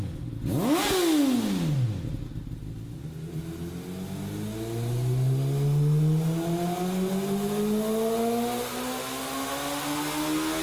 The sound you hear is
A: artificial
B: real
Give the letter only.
B